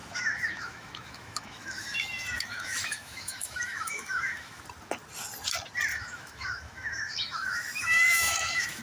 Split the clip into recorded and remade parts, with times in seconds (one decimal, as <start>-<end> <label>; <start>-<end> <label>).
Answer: 0.0-4.6 remade; 4.6-5.9 recorded; 5.9-8.8 remade